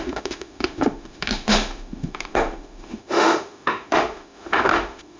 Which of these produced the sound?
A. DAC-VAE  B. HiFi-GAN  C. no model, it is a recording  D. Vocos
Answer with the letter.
A